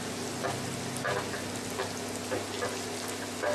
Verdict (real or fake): real